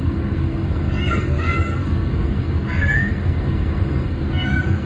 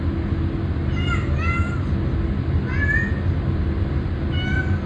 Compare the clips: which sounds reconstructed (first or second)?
first